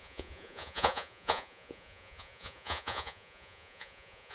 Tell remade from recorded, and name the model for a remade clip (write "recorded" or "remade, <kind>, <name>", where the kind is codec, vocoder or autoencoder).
remade, vocoder, Vocos